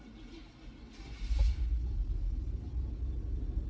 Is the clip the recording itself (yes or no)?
yes